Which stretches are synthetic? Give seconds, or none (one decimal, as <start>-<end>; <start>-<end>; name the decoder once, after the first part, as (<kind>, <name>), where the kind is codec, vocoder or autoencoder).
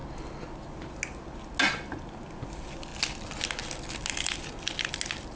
none